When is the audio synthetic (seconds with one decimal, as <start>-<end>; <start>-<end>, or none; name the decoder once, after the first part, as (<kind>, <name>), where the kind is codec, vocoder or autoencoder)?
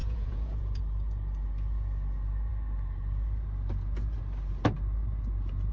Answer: 0.0-0.8 (vocoder, Vocos)